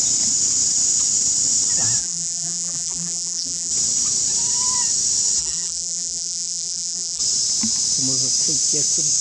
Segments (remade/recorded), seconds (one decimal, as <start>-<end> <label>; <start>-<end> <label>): 0.0-2.0 recorded; 2.0-3.7 remade; 3.7-5.4 recorded; 5.4-7.2 remade; 7.2-9.2 recorded